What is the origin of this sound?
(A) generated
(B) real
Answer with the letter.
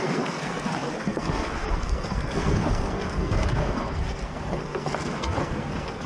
A